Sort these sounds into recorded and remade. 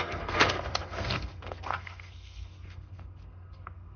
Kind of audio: remade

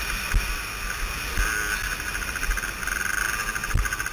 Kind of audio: recorded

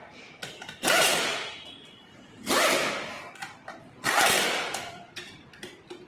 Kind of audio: recorded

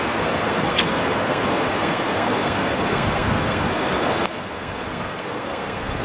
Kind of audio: remade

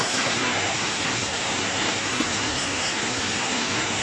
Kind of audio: remade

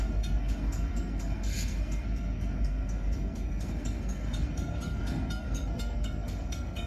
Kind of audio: remade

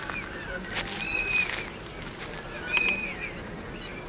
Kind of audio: recorded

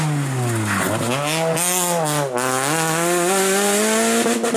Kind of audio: recorded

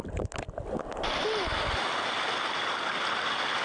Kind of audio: recorded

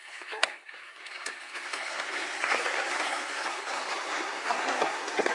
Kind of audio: remade